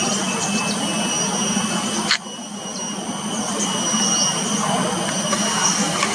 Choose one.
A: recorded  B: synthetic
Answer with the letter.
A